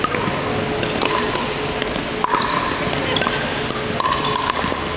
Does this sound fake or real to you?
real